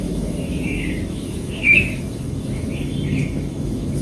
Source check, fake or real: fake